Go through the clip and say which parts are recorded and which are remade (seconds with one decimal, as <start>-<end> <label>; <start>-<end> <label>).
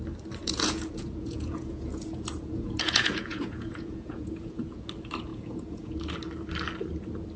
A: 0.0-0.4 recorded; 0.4-4.8 remade; 4.8-5.3 recorded; 5.3-6.0 remade; 6.0-7.4 recorded